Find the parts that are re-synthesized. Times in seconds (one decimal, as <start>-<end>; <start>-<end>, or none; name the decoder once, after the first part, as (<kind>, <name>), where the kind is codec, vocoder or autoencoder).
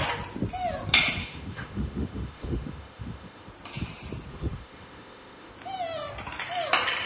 1.2-3.5 (autoencoder, DAC-VAE); 4.3-5.5